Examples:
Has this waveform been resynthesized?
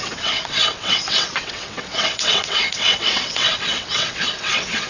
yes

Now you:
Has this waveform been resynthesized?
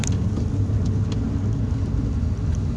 no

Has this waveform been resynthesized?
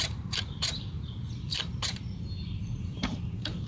yes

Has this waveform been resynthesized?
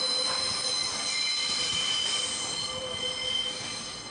no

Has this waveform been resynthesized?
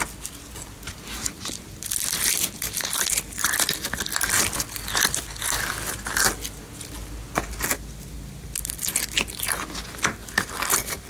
no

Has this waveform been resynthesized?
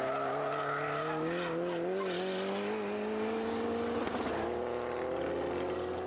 no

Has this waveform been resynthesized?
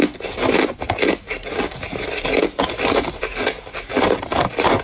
no